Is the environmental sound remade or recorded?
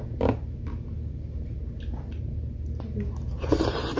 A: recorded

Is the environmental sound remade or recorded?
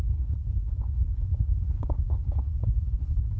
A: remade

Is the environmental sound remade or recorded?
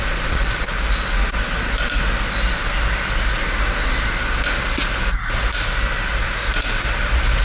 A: recorded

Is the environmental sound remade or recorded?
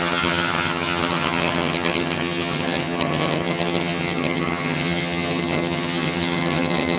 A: remade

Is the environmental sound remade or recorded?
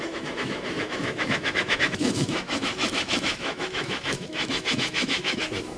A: remade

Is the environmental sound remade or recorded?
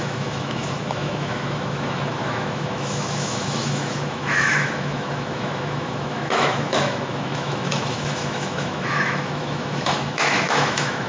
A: remade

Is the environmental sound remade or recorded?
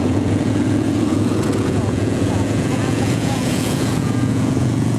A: remade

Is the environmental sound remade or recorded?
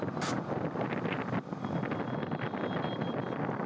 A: recorded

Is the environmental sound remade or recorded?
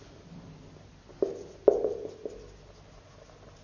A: recorded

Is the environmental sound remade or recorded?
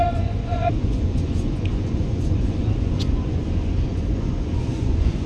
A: remade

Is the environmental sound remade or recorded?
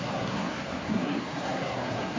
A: remade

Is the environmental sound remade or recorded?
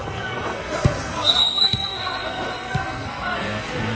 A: remade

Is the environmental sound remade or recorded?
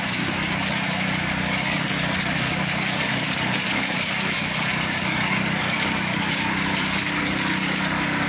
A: remade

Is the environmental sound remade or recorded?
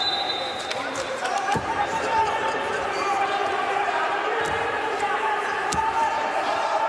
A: remade